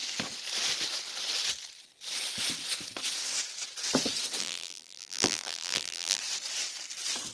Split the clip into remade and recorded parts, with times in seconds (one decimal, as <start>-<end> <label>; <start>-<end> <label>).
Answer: 0.0-4.4 recorded; 4.4-6.2 remade; 6.2-7.3 recorded